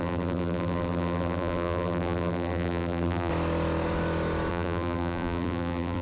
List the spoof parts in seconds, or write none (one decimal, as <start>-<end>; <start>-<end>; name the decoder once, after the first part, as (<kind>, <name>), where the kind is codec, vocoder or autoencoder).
0.0-3.3 (vocoder, BigVGAN v2); 4.5-6.0